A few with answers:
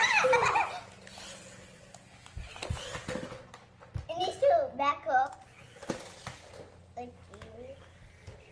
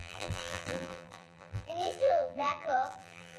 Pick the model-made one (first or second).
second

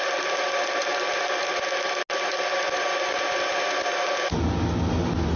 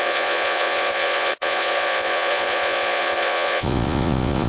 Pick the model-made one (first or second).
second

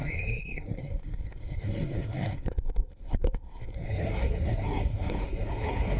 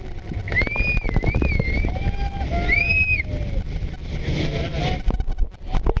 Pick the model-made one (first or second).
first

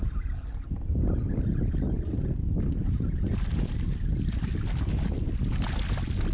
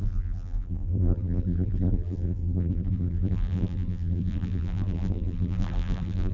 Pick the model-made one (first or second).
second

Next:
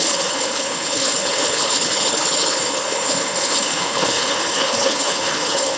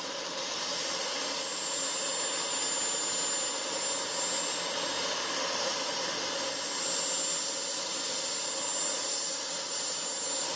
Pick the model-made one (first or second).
first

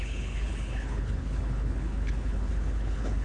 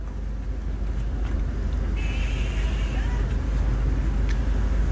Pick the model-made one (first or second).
first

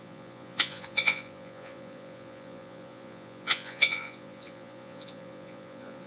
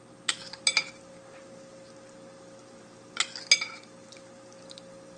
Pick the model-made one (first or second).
first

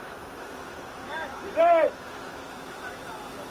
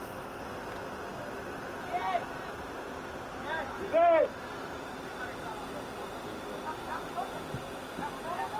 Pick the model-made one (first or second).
first